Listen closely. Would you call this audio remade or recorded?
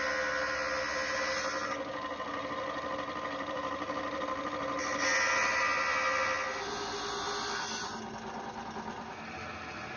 recorded